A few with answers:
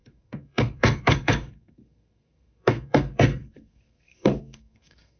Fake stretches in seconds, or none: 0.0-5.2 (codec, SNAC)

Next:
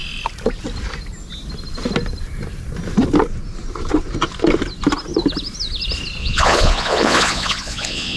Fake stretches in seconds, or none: 6.2-8.2 (vocoder, Vocos)

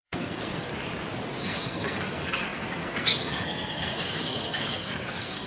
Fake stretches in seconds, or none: 0.0-0.7 (codec, SNAC); 1.4-5.5

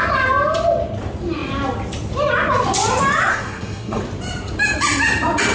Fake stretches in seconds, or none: 3.3-4.0 (codec, SNAC)

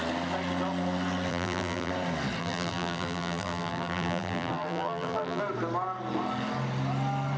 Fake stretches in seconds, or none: 1.3-1.9 (vocoder, BigVGAN v2); 2.4-5.4